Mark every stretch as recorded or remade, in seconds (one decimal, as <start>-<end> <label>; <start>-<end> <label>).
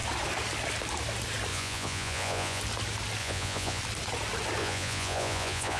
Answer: 0.0-1.5 recorded; 1.5-2.6 remade; 2.6-3.2 recorded; 3.2-3.8 remade; 3.8-4.6 recorded; 4.6-5.8 remade